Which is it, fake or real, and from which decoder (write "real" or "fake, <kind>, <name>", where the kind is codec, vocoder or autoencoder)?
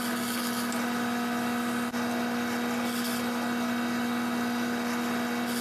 real